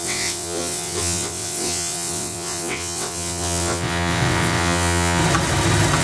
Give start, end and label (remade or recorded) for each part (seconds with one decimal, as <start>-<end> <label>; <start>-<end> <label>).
0.0-5.2 remade; 5.2-6.0 recorded